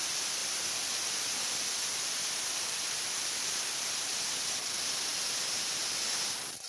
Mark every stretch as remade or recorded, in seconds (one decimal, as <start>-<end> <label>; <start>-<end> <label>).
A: 0.0-6.7 recorded